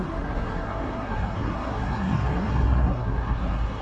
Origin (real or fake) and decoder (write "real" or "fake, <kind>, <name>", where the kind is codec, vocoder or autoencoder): fake, codec, SNAC